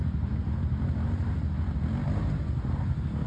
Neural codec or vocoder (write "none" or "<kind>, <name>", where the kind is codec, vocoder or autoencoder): none